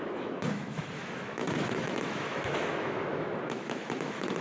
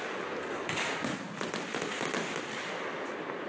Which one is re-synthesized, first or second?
first